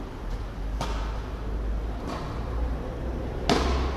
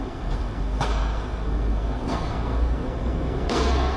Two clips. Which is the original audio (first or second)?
first